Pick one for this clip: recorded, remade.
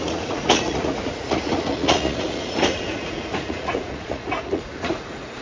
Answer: remade